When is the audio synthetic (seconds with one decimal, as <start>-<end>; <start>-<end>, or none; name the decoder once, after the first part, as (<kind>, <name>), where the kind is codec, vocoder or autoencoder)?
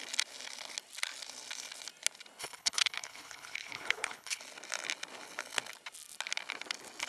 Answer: 2.4-4.4 (codec, HILCodec)